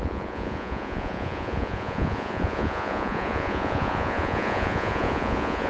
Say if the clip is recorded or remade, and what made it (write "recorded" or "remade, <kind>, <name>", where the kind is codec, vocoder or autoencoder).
remade, vocoder, Vocos